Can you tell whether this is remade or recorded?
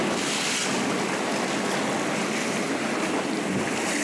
recorded